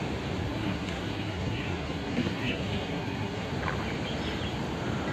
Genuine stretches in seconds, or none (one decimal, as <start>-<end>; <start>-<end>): 0.0-0.4; 3.5-5.1